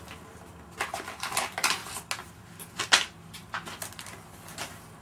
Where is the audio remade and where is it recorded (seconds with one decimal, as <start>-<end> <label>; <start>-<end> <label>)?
0.0-5.0 recorded